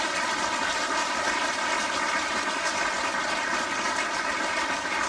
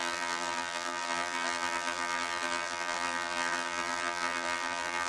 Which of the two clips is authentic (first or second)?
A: first